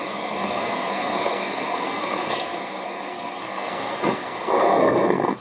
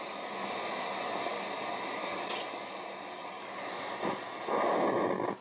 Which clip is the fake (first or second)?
first